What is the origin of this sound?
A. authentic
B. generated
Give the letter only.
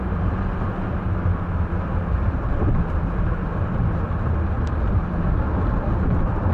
A